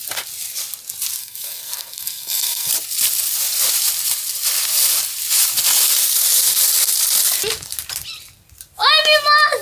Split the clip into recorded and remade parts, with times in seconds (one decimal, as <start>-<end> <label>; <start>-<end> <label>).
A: 0.0-1.2 recorded; 1.2-2.7 remade; 2.7-9.6 recorded